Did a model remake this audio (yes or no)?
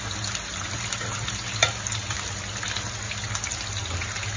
no